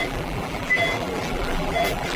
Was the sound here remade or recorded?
remade